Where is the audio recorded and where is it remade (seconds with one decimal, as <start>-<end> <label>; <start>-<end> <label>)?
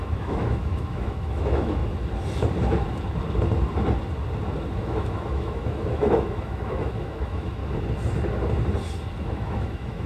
0.0-1.8 remade; 1.8-4.8 recorded; 4.8-7.6 remade; 7.6-9.2 recorded; 9.2-10.1 remade